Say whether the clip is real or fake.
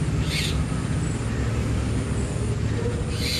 real